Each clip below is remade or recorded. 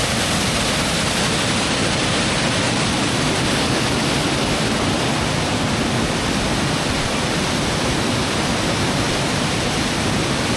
recorded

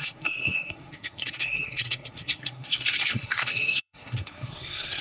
remade